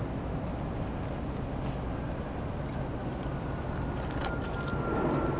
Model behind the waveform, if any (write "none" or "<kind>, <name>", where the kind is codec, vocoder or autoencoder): none